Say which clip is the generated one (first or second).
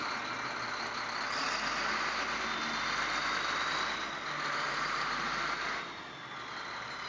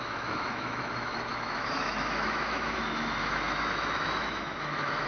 second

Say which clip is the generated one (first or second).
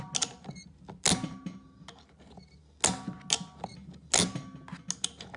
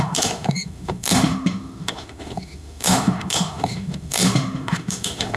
second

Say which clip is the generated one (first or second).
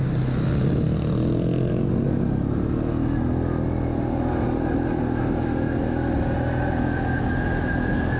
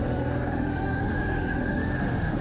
second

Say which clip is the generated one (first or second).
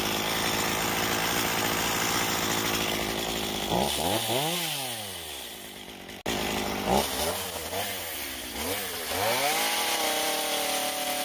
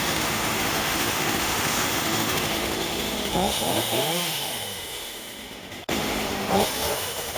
second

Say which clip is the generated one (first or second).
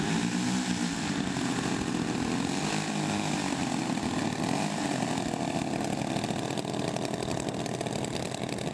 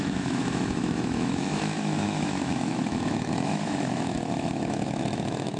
second